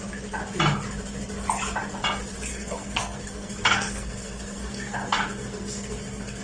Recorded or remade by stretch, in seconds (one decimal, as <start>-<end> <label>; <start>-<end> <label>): 0.0-2.5 recorded; 2.5-6.4 remade